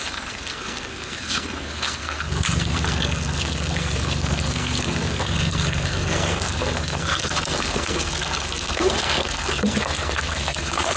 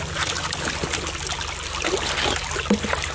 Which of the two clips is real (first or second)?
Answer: second